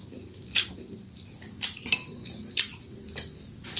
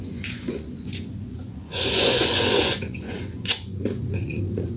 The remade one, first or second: second